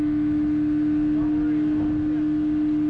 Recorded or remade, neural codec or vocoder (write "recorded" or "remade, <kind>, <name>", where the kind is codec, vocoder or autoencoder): recorded